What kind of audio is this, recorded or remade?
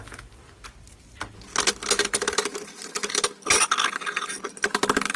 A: recorded